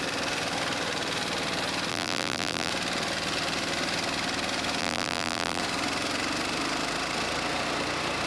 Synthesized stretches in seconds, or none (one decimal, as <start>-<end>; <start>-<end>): 1.9-2.7; 4.8-5.6